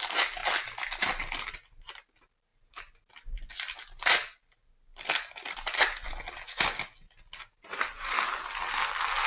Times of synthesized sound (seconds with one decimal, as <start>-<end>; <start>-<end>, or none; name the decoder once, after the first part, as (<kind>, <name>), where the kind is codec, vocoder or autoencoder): none